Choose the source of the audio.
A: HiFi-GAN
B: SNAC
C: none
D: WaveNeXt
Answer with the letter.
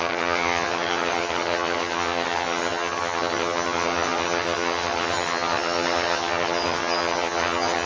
A